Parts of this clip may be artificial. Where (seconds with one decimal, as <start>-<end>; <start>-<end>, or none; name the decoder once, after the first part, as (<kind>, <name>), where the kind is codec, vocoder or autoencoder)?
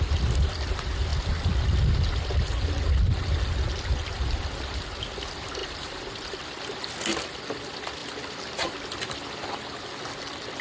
none